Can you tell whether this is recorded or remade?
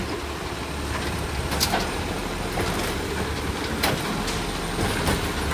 recorded